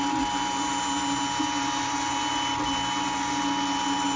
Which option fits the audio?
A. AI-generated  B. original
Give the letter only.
B